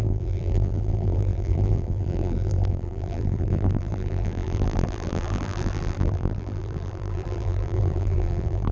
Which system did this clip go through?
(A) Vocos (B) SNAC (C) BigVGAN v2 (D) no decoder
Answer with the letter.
C